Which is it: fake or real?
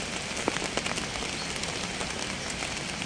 real